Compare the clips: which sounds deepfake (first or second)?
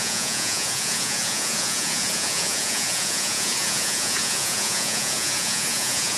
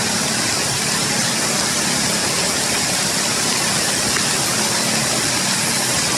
first